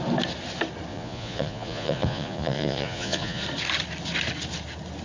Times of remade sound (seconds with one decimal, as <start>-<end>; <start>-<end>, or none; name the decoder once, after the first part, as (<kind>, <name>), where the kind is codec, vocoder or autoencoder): 0.9-3.4 (vocoder, Vocos)